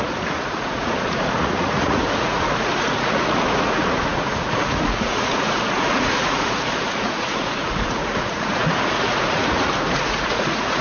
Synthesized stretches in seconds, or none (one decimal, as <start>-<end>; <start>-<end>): 0.0-10.8